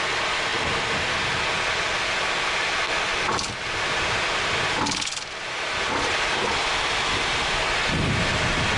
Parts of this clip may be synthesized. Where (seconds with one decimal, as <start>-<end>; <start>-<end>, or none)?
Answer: none